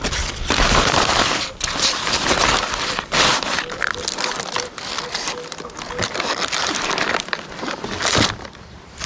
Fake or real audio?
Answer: fake